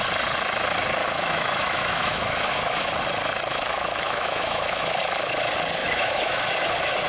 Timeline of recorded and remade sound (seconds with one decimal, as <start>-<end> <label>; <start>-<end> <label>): 0.0-1.0 recorded; 1.0-2.9 remade; 2.9-3.5 recorded; 3.5-5.0 remade; 5.0-5.8 recorded; 5.8-6.4 remade; 6.4-7.1 recorded